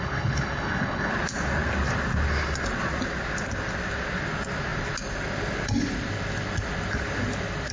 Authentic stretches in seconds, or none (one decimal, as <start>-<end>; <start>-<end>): 1.1-7.7